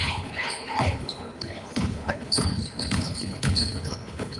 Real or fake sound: fake